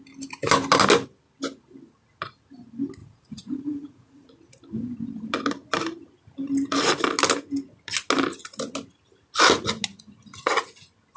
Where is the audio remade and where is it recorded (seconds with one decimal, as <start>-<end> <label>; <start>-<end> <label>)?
0.0-3.0 recorded; 3.0-4.3 remade; 4.3-11.2 recorded